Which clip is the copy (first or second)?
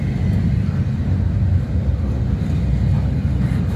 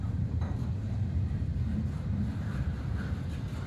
second